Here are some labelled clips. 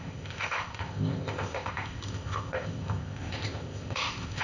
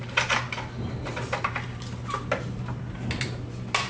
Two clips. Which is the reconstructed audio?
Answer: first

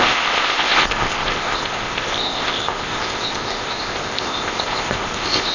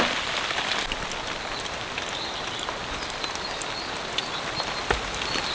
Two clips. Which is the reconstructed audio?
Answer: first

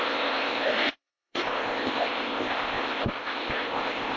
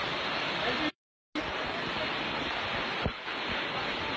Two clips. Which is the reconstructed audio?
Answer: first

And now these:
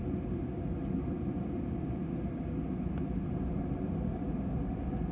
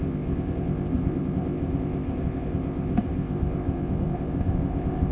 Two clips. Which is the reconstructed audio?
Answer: second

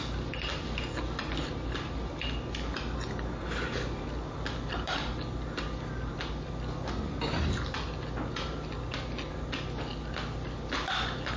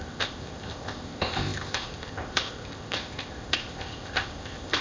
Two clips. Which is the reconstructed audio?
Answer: second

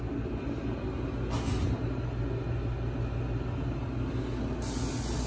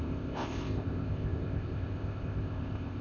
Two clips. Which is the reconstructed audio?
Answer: second